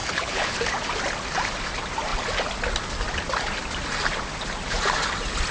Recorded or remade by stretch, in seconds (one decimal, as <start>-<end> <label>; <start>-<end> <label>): 0.0-0.5 remade; 0.5-5.5 recorded